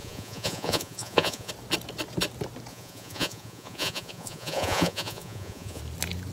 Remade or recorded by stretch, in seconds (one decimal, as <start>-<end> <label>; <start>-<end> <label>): 0.0-1.5 remade; 1.5-2.7 recorded; 2.7-5.8 remade; 5.8-6.3 recorded